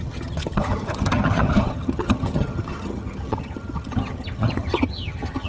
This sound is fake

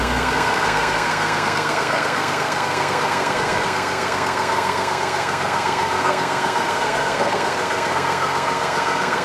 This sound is fake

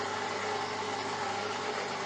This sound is real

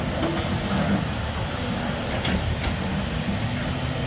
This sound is real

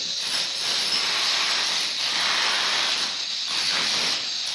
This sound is real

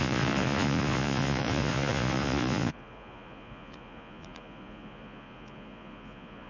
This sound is fake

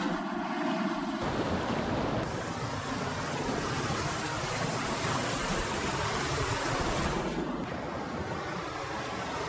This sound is real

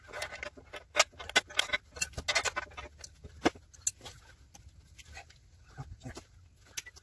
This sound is real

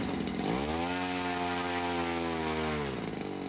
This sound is real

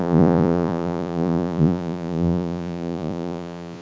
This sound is fake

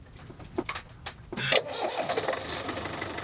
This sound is real